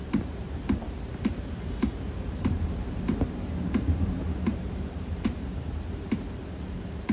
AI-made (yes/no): yes